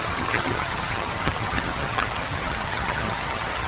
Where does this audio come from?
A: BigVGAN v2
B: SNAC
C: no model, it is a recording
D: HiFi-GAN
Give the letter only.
D